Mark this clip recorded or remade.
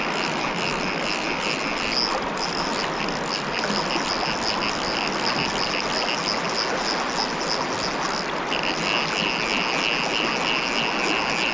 recorded